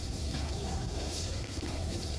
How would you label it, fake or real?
fake